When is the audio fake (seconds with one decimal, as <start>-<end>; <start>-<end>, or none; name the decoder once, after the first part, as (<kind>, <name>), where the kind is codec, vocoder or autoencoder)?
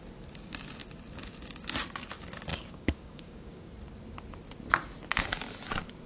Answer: 2.5-3.7 (codec, DAC)